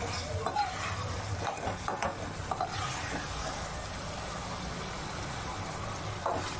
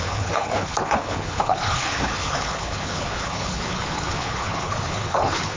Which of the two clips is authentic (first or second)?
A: first